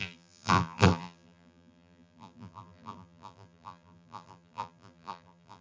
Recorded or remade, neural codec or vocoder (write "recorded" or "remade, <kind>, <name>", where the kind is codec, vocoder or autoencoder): remade, vocoder, BigVGAN v2